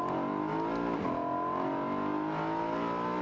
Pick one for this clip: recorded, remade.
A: recorded